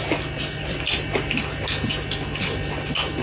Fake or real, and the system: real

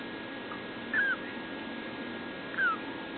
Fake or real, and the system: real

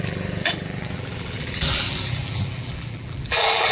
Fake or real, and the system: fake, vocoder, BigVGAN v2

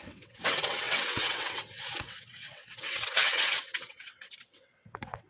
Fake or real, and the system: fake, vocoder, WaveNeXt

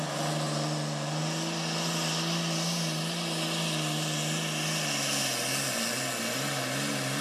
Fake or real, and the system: real